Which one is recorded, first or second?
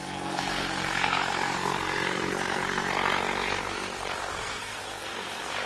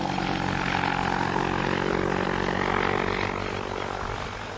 second